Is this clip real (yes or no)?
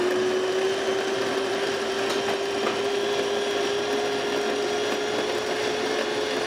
yes